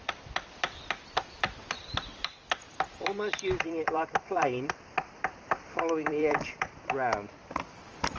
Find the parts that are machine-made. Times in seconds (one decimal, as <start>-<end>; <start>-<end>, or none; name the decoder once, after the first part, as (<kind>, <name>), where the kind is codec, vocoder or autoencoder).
0.0-8.2 (vocoder, BigVGAN v2)